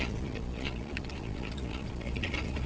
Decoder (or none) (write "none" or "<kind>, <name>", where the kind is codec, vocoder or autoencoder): vocoder, Vocos